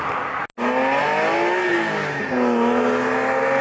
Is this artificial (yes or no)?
no